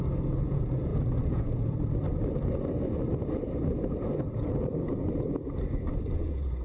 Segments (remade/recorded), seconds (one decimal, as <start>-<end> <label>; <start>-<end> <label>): 0.0-2.0 remade; 2.0-6.0 recorded; 6.0-6.6 remade